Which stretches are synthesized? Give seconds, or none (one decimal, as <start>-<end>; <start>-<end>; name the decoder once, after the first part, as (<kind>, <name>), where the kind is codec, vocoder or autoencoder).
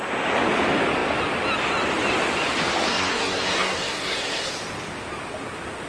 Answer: 2.9-4.5 (codec, SNAC)